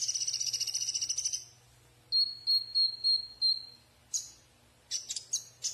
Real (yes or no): yes